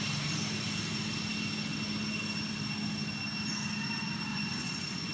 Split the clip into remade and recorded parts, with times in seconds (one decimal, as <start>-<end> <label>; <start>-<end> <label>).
0.0-4.3 recorded; 4.3-5.1 remade